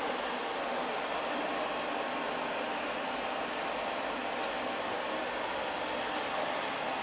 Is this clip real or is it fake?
real